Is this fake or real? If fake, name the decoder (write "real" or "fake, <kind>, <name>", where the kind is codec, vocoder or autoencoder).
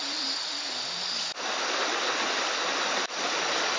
real